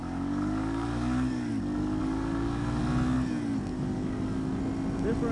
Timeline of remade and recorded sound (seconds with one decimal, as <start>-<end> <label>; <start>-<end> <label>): 0.0-1.5 remade; 1.5-2.0 recorded; 2.0-2.8 remade; 2.8-3.7 recorded; 3.7-4.6 remade; 4.6-5.3 recorded